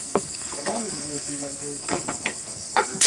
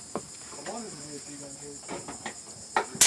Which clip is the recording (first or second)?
second